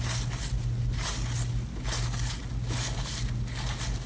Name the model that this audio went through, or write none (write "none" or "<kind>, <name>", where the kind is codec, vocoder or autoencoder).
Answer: none